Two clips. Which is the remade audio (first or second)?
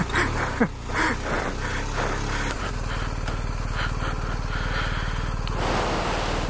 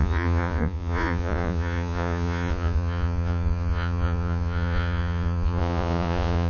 second